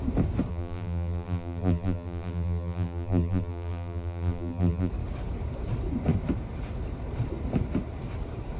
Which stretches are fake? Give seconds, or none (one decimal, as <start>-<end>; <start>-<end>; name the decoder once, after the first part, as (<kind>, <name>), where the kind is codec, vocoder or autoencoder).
0.5-4.9 (vocoder, BigVGAN v2)

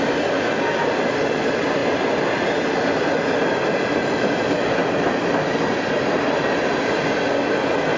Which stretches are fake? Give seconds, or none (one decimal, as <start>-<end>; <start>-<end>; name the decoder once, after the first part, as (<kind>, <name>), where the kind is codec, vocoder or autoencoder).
none

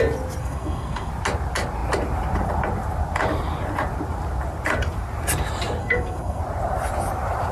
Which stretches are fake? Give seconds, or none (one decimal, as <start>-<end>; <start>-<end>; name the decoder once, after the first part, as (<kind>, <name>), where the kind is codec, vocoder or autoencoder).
0.4-1.1 (codec, SNAC); 5.8-6.4

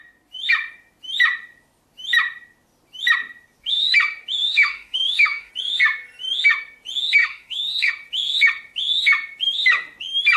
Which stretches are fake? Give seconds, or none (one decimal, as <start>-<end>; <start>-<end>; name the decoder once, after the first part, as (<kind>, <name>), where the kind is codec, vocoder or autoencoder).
4.4-5.5 (autoencoder, DAC-VAE); 7.2-7.9

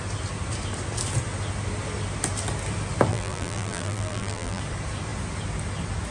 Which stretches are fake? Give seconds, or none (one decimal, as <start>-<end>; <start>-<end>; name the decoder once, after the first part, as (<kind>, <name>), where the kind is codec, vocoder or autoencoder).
3.1-4.6 (vocoder, BigVGAN v2)